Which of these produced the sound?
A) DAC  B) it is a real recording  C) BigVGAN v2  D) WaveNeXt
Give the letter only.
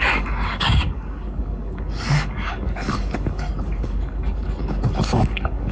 A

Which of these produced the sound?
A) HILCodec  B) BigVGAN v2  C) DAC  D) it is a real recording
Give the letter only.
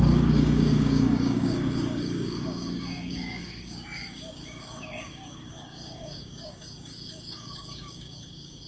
C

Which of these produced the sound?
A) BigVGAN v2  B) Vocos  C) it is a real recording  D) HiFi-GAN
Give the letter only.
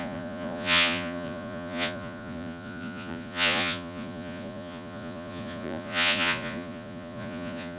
B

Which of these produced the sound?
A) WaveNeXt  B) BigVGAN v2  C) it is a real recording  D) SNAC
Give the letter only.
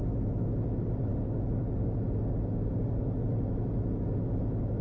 C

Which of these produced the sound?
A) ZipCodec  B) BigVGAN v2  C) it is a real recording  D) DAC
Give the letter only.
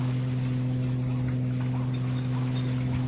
C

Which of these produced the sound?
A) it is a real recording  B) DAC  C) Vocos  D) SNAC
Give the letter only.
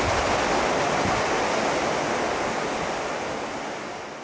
A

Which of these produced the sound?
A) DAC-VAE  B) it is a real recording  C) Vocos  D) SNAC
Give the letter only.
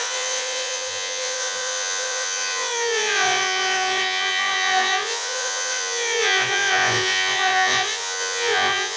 C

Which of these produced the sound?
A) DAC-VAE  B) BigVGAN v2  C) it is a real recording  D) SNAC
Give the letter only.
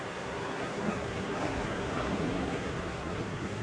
D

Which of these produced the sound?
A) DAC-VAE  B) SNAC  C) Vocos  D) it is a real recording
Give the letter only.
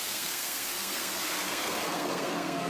B